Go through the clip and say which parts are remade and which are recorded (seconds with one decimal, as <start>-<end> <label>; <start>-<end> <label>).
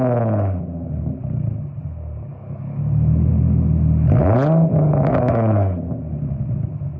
0.0-2.3 recorded; 2.3-2.8 remade; 2.8-4.7 recorded; 4.7-5.8 remade; 5.8-7.0 recorded